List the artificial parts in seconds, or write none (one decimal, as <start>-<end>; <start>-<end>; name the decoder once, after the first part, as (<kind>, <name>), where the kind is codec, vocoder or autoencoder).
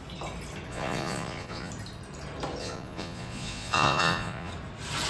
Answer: 0.7-1.7 (vocoder, Vocos); 2.6-4.5